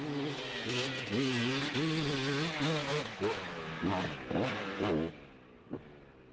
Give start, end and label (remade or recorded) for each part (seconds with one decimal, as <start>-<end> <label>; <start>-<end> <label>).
0.0-2.9 recorded; 2.9-3.9 remade; 3.9-6.3 recorded